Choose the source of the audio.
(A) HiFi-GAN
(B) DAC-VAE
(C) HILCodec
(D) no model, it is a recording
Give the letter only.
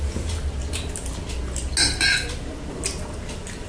D